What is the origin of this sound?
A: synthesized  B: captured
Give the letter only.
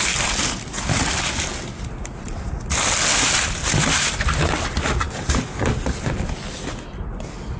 B